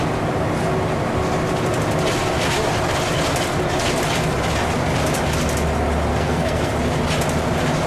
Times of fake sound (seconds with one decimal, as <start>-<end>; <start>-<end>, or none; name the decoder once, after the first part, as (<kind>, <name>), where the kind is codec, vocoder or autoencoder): 6.1-6.7 (codec, SNAC)

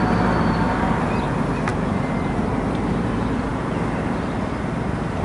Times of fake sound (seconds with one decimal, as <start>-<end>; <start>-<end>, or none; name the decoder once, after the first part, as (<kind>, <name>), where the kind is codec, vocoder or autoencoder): none

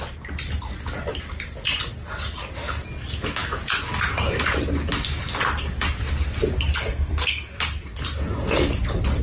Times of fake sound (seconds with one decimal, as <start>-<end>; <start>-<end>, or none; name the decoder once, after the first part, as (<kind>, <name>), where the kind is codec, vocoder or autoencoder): 6.8-7.5 (codec, SNAC)

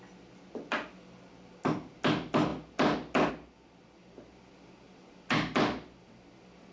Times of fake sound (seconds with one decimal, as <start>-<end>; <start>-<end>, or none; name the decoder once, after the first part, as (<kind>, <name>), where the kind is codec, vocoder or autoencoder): none